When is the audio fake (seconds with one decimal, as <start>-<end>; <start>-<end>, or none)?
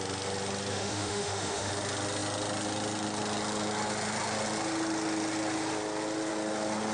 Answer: 0.7-1.7